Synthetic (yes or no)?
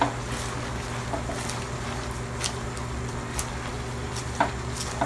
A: no